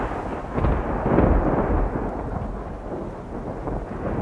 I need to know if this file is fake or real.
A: real